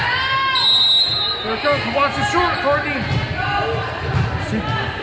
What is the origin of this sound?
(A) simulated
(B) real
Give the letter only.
B